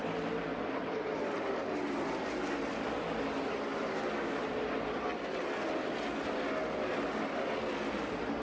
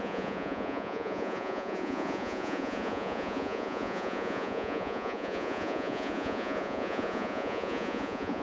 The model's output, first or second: second